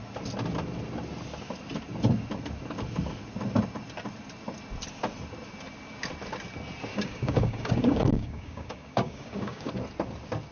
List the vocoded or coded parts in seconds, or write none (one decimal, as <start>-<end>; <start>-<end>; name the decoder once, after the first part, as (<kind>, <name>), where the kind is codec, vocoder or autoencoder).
6.9-9.7 (codec, DAC)